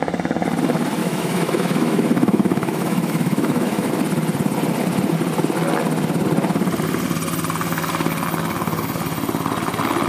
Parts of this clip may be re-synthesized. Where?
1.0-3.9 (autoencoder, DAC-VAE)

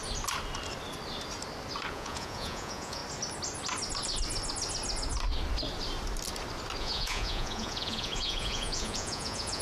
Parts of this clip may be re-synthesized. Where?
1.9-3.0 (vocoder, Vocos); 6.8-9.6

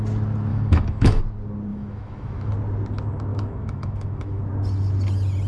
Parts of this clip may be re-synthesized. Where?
0.5-1.2 (autoencoder, DAC-VAE); 1.7-2.5; 3.3-4.4

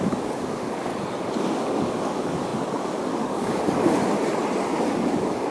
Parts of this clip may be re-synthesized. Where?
0.0-0.9 (codec, DAC); 1.5-4.0; 4.7-5.5